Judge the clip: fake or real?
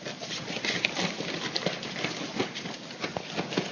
real